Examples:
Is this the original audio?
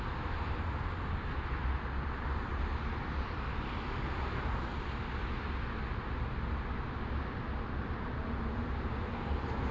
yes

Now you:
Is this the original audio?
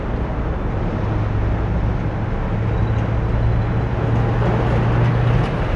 yes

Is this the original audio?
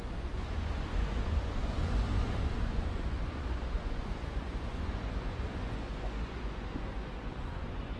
no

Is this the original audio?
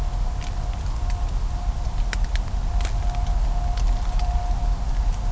yes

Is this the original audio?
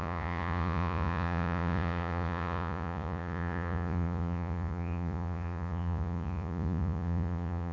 no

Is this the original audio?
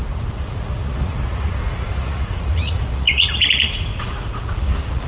no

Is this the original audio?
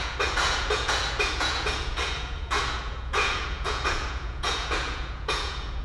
no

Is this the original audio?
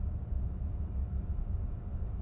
yes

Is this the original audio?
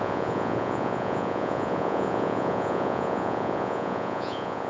no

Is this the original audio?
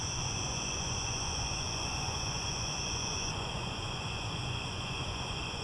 no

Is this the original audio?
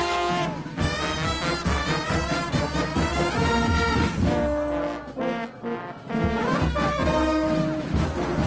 yes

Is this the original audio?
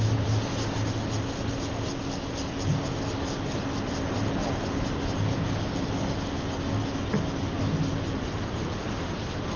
yes